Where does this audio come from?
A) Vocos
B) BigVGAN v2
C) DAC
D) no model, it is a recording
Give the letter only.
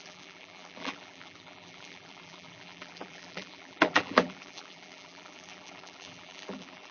B